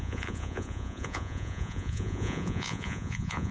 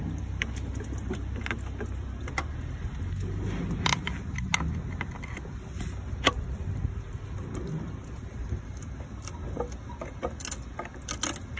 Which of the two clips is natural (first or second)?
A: second